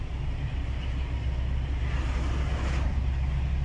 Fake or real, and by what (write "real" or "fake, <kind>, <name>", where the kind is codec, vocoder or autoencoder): real